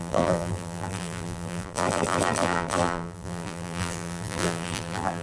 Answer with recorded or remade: remade